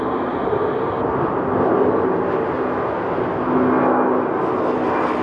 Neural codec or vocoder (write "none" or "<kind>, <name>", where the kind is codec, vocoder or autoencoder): none